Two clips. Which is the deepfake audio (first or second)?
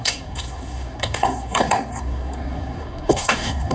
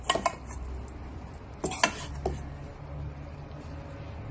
first